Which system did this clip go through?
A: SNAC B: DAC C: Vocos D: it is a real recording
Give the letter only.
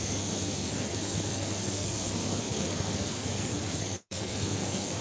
A